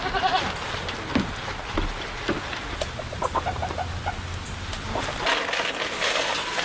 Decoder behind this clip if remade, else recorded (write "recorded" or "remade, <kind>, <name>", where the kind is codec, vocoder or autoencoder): recorded